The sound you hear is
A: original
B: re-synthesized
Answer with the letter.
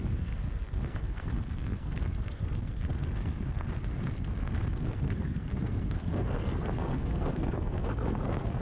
B